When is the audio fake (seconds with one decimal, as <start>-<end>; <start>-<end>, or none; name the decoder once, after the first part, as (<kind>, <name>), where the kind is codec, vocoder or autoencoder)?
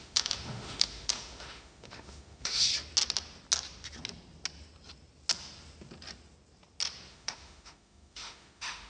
0.0-2.7 (autoencoder, DAC-VAE); 7.1-8.9